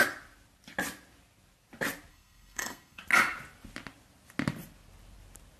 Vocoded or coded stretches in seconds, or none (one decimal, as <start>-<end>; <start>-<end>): 2.1-3.0